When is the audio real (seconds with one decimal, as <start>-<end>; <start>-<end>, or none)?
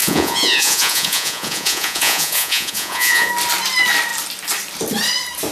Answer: 3.3-5.5